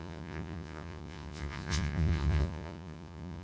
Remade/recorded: remade